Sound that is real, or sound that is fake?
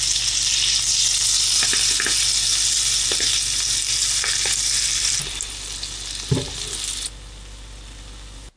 real